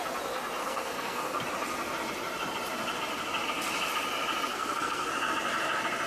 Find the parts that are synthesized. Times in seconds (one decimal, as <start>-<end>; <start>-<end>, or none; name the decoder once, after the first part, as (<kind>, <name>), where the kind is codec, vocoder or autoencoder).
0.6-1.4 (codec, SNAC); 4.5-5.1